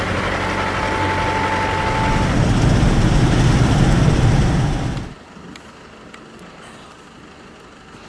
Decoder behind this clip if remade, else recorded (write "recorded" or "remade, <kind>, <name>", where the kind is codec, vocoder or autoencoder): recorded